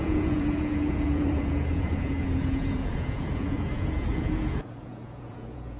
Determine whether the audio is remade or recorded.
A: remade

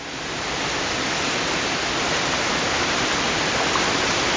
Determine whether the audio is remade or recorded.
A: recorded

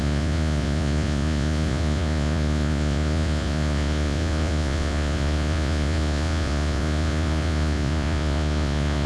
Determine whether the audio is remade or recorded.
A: remade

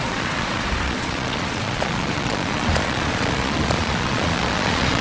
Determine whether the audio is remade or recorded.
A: remade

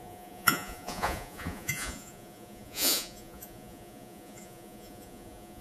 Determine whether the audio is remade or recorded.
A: remade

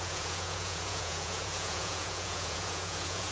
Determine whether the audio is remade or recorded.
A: remade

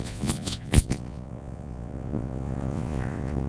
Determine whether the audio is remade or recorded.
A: remade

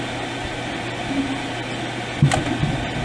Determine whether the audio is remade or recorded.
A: recorded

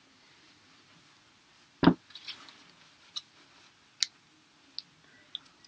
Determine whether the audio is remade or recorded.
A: recorded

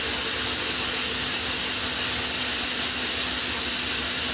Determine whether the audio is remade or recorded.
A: recorded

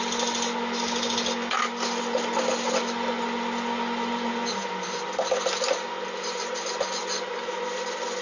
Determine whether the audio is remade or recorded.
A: recorded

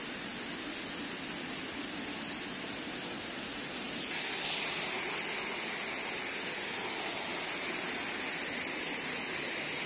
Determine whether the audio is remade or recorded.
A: recorded